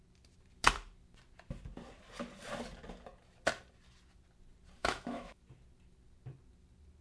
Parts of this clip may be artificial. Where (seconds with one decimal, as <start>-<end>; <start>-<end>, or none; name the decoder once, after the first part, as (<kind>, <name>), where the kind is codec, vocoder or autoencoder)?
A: 4.8-5.4 (autoencoder, DAC-VAE)